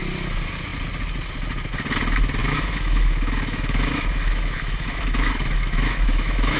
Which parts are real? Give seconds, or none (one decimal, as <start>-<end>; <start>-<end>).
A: 0.0-2.4